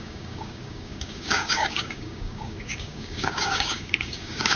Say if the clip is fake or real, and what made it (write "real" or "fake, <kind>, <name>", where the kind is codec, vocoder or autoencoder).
fake, codec, DAC